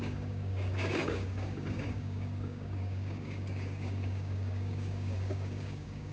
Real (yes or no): no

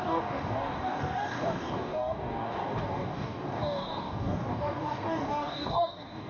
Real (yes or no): no